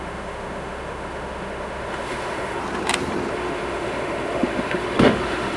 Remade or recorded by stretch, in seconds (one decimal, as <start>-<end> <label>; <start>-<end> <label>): 0.0-2.6 remade; 2.6-3.3 recorded; 3.3-5.6 remade